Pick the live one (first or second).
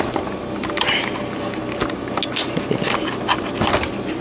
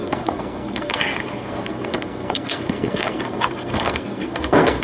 first